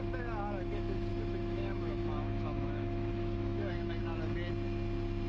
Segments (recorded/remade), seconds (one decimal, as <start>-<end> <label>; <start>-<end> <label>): 0.0-1.1 recorded; 1.1-4.0 remade; 4.0-5.3 recorded